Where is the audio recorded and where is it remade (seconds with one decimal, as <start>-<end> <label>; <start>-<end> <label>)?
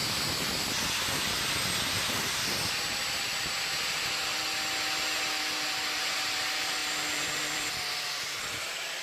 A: 0.0-3.3 remade; 3.3-6.0 recorded; 6.0-9.0 remade